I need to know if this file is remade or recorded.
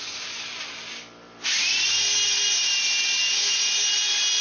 recorded